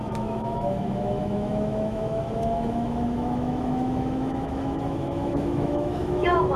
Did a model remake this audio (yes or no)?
yes